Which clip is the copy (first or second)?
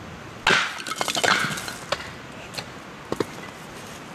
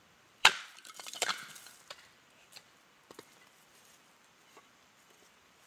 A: second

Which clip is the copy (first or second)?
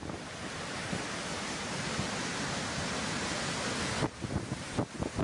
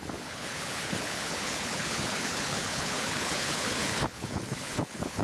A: second